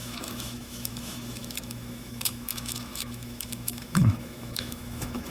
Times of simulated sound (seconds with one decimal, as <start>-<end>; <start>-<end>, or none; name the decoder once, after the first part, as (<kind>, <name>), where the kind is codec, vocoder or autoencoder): 0.0-5.3 (autoencoder, DAC-VAE)